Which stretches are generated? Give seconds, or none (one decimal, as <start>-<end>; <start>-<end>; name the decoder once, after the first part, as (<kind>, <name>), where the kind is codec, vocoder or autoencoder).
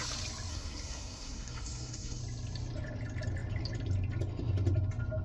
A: 0.5-2.2 (codec, SNAC)